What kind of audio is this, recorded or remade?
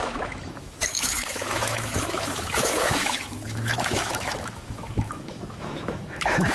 remade